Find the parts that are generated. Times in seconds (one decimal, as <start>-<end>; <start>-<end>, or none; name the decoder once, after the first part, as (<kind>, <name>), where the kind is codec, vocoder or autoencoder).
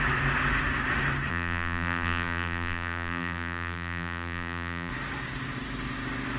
1.3-4.9 (vocoder, BigVGAN v2)